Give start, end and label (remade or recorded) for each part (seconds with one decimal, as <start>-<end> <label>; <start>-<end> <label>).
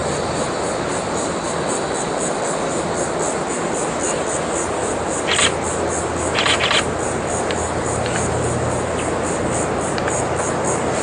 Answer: 0.0-11.0 recorded